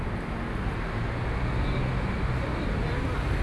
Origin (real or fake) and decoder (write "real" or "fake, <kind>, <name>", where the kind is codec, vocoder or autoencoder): real